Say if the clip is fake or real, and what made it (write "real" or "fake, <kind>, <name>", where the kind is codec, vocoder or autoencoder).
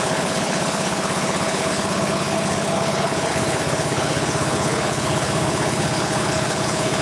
fake, codec, HILCodec